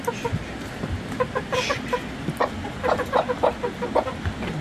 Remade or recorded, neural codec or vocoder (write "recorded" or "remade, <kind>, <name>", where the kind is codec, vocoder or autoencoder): recorded